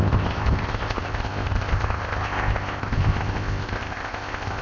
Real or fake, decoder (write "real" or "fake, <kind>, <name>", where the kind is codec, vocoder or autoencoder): fake, codec, ZipCodec